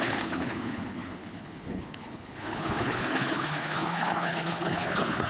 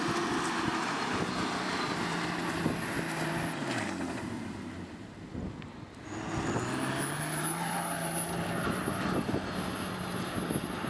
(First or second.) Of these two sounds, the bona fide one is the second